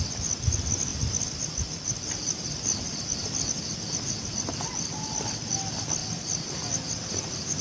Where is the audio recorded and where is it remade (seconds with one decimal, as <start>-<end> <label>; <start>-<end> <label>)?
0.0-7.6 recorded